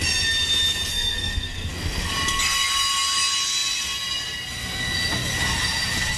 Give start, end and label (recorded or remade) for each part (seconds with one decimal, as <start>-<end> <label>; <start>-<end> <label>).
0.0-0.9 recorded; 0.9-2.1 remade; 2.1-6.2 recorded